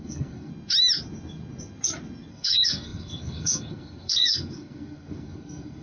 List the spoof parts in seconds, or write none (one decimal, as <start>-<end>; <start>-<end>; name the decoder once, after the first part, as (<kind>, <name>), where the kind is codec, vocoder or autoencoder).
0.0-0.5 (codec, SNAC); 2.3-5.8